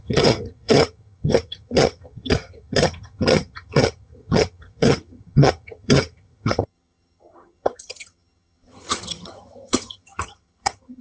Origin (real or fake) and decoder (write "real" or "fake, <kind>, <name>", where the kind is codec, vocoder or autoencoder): fake, vocoder, HiFi-GAN